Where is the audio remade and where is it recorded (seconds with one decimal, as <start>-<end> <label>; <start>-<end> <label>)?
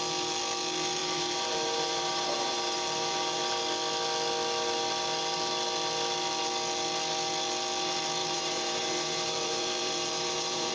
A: 0.0-1.0 recorded; 1.0-3.4 remade; 3.4-8.2 recorded; 8.2-10.7 remade